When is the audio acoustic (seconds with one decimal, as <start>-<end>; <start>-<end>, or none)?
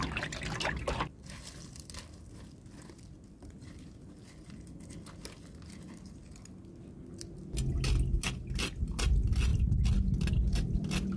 0.0-11.2